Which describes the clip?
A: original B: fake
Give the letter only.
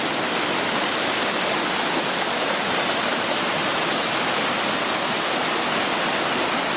A